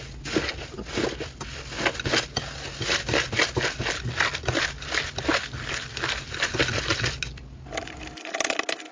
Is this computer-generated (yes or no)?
no